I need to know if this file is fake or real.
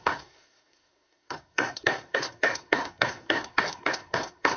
fake